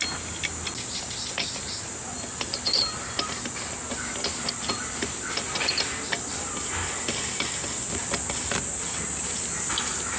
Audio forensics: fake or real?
real